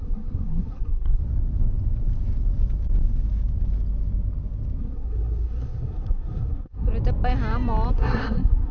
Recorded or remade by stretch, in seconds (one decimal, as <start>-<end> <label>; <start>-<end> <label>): 0.0-1.2 remade; 1.2-4.8 recorded; 4.8-6.9 remade; 6.9-7.9 recorded; 7.9-8.7 remade